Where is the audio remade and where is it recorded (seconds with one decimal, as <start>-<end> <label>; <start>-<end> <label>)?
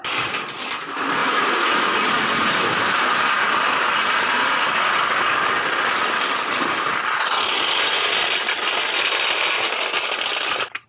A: 0.0-10.9 recorded